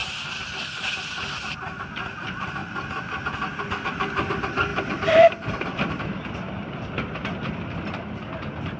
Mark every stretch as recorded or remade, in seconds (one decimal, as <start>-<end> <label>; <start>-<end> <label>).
0.0-1.2 remade; 1.2-4.7 recorded; 4.7-5.9 remade; 5.9-8.8 recorded